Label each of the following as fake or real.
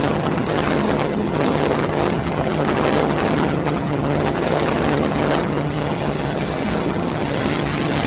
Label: fake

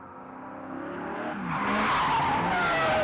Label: real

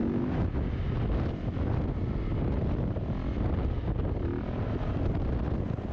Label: real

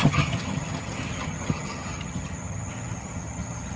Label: fake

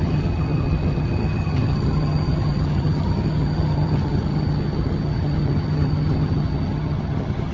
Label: fake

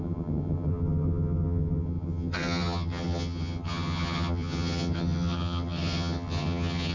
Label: fake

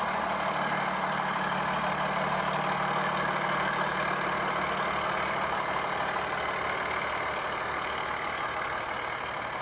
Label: real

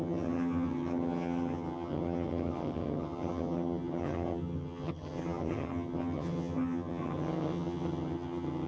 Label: fake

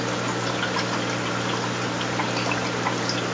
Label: real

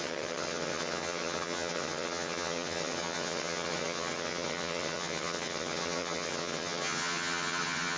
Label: fake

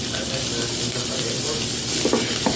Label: real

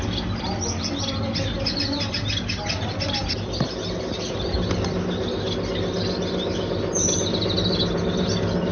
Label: real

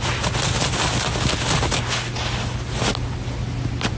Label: real